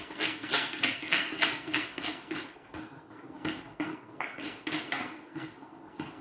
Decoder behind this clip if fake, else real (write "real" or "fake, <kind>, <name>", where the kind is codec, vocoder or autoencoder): fake, codec, SNAC